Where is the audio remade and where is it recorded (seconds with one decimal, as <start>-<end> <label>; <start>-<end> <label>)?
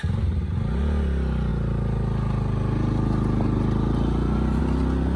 0.0-5.2 recorded